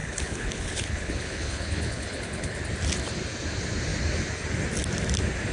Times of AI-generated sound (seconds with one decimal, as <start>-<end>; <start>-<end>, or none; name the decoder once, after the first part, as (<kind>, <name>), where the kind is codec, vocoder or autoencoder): 0.0-2.6 (codec, HILCodec)